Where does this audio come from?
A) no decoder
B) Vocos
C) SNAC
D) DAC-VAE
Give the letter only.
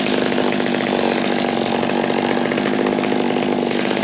A